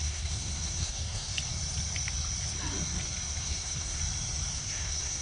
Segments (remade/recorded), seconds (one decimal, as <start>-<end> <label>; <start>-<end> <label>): 0.0-1.3 remade; 1.3-3.4 recorded; 3.4-4.0 remade; 4.0-4.5 recorded; 4.5-5.2 remade